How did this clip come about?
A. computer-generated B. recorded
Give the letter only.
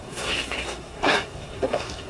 A